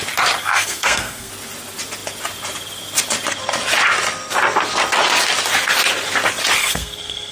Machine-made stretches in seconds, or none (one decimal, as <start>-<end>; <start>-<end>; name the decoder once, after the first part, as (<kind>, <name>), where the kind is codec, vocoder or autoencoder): 0.4-1.3 (codec, SNAC); 6.6-7.3